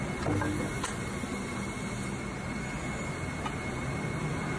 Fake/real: real